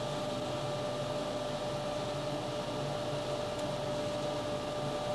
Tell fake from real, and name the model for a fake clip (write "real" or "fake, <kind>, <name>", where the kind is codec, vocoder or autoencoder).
real